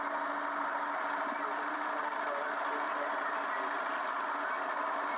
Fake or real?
real